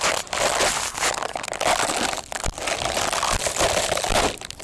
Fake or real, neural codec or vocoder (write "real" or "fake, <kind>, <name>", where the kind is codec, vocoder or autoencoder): real